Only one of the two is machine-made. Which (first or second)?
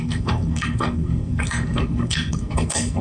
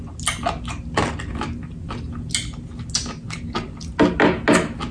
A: first